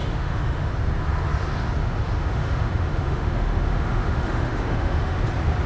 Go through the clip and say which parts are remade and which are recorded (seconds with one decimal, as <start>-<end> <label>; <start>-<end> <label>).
0.0-0.7 remade; 0.7-1.8 recorded; 1.8-5.2 remade; 5.2-5.7 recorded